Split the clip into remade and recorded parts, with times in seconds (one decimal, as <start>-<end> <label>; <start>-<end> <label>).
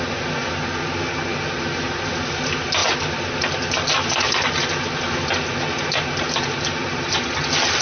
0.0-0.4 remade; 0.4-1.6 recorded; 1.6-7.8 remade